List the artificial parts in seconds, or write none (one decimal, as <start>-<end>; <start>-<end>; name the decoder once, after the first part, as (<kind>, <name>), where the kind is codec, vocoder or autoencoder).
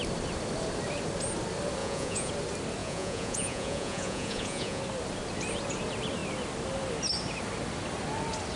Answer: 1.8-2.3 (vocoder, Vocos); 2.8-4.8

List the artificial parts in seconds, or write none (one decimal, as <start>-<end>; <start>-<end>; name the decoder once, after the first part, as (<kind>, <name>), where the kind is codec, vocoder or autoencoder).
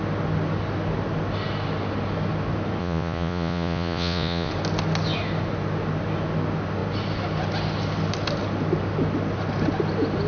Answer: 2.8-4.5 (vocoder, Vocos)